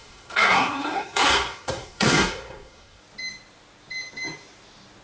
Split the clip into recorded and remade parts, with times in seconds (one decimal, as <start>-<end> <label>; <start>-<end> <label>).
0.0-3.0 remade; 3.0-5.0 recorded